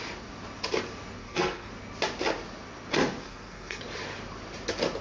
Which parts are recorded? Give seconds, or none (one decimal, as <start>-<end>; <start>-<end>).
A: 0.0-1.2; 1.7-3.2; 3.8-5.0